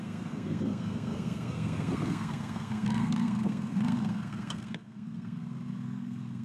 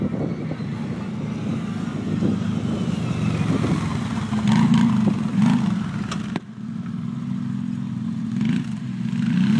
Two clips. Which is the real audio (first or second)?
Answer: second